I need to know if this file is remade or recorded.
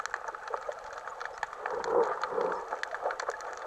recorded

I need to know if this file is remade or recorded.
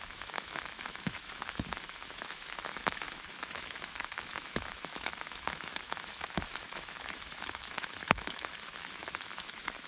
remade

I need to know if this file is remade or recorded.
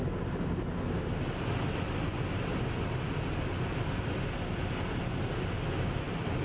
recorded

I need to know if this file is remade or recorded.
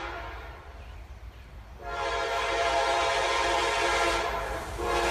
remade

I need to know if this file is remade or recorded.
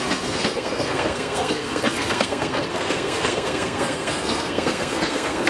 remade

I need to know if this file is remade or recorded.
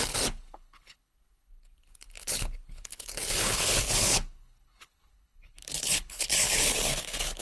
remade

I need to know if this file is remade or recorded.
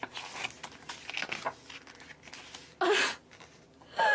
recorded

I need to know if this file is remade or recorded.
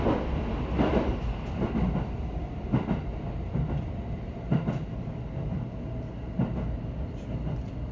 recorded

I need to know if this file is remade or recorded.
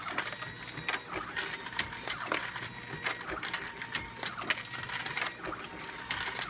recorded